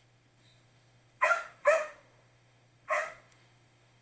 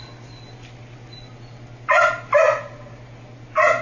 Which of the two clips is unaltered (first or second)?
second